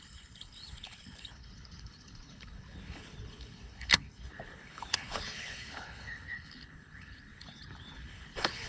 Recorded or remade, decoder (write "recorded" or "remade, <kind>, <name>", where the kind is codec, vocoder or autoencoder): remade, codec, HILCodec